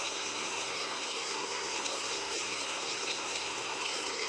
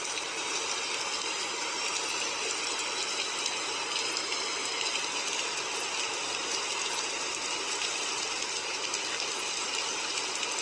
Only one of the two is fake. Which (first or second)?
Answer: first